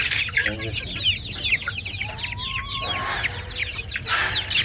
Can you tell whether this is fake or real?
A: real